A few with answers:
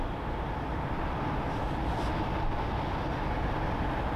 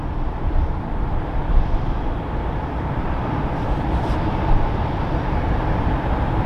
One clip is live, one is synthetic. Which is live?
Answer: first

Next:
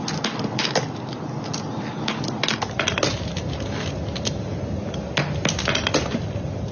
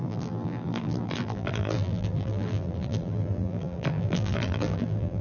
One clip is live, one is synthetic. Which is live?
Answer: first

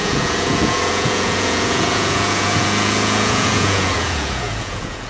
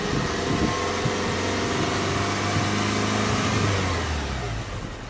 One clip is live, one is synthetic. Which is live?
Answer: second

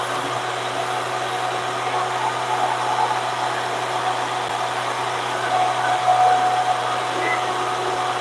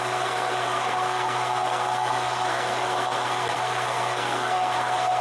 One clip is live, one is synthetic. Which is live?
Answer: first